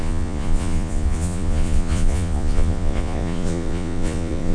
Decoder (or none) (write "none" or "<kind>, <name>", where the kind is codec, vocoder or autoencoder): vocoder, Vocos